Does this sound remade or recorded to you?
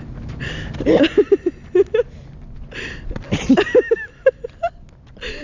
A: recorded